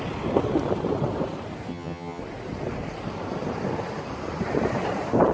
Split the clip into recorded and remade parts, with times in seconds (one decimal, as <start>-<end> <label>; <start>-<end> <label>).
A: 0.0-1.7 recorded; 1.7-2.2 remade; 2.2-5.3 recorded

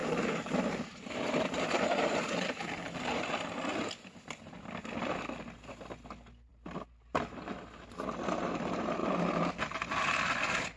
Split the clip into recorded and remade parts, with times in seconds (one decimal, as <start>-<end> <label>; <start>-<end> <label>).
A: 0.0-3.3 remade; 3.3-10.8 recorded

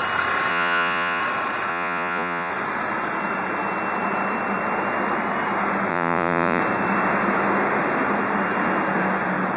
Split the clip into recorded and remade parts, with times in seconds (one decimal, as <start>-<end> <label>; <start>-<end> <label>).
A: 0.0-0.5 recorded; 0.5-1.2 remade; 1.2-1.7 recorded; 1.7-2.5 remade; 2.5-5.9 recorded; 5.9-6.6 remade; 6.6-9.6 recorded

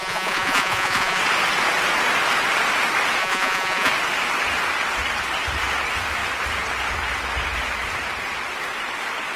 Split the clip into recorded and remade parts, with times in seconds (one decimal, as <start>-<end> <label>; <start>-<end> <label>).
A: 0.0-1.2 remade; 1.2-3.2 recorded; 3.2-3.9 remade; 3.9-9.4 recorded

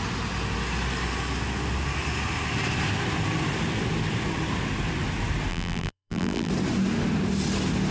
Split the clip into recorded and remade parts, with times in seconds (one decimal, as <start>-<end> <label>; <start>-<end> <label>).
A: 0.0-5.5 recorded; 5.5-6.5 remade; 6.5-7.9 recorded

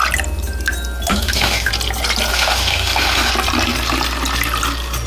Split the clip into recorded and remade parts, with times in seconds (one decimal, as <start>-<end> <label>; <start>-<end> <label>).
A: 0.0-1.1 recorded; 1.1-1.7 remade; 1.7-2.3 recorded; 2.3-3.3 remade; 3.3-5.1 recorded

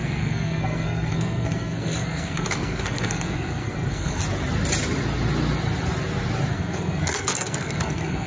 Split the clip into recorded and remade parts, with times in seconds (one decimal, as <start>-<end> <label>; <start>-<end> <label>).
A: 0.0-4.2 remade; 4.2-6.5 recorded; 6.5-8.3 remade

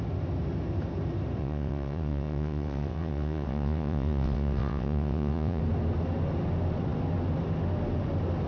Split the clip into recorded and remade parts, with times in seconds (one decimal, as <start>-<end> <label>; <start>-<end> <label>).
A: 0.0-1.4 recorded; 1.4-5.6 remade; 5.6-8.5 recorded